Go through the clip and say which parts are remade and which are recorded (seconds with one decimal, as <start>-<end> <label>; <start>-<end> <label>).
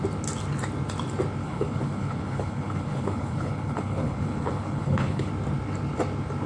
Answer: 0.0-1.4 recorded; 1.4-5.3 remade; 5.3-6.5 recorded